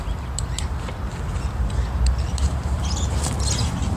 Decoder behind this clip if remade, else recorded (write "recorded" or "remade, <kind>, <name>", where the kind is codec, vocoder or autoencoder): recorded